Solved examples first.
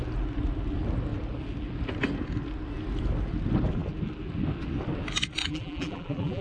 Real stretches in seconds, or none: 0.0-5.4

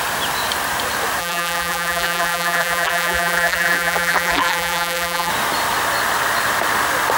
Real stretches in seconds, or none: 0.0-1.2; 5.3-7.2

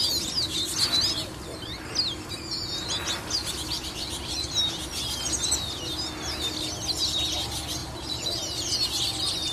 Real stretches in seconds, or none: 0.0-3.4; 4.7-7.8; 8.4-9.5

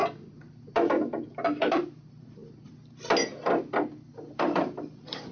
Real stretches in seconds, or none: 0.0-0.9; 2.4-4.3

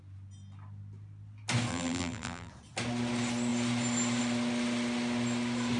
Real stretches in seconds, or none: 0.0-1.7; 2.5-5.8

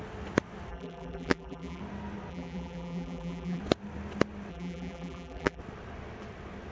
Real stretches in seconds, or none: 0.0-0.7; 1.8-2.3; 3.6-4.5; 5.6-6.7